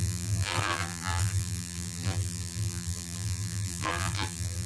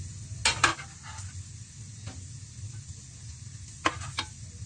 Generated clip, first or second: first